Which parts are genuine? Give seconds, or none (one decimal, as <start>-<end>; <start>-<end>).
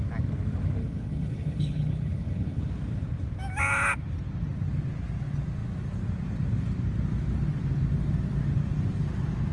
0.0-0.8; 2.6-9.5